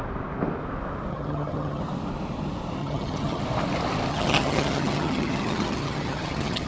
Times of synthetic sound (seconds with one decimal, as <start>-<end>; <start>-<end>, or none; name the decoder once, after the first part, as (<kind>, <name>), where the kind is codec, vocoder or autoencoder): 1.1-1.8 (vocoder, HiFi-GAN); 2.8-3.4; 4.1-6.7

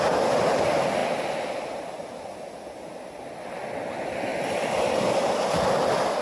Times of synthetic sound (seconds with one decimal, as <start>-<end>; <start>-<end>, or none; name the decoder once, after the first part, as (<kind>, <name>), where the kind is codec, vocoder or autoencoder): none

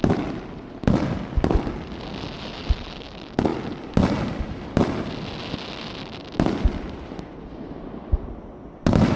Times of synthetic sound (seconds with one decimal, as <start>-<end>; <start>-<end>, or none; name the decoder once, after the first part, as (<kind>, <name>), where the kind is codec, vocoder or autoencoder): none

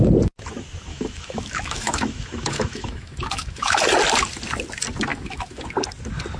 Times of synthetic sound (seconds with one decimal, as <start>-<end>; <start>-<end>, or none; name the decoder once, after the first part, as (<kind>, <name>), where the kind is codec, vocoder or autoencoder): 0.9-3.8 (autoencoder, DAC-VAE); 5.1-5.6

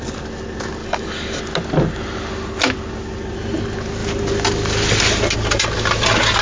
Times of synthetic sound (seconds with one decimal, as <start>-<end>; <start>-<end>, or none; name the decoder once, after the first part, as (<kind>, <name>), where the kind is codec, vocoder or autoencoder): 0.8-1.4 (codec, DAC)